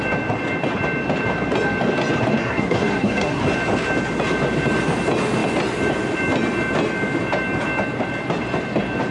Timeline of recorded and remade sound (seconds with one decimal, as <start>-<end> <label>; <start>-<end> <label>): 0.0-2.4 recorded; 2.4-3.4 remade; 3.4-9.1 recorded